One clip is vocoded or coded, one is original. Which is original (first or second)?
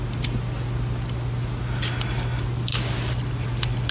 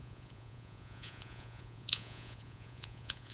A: first